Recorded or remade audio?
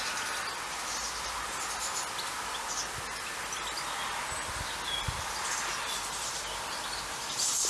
recorded